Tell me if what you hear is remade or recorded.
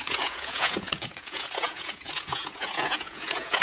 remade